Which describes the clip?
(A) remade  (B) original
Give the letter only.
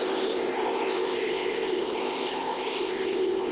A